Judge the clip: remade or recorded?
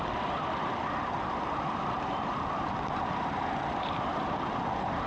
recorded